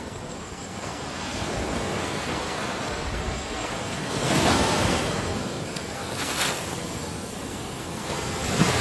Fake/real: fake